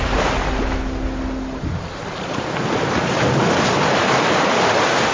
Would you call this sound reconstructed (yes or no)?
no